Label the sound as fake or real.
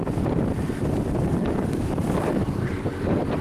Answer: fake